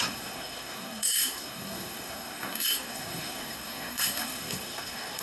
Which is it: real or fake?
fake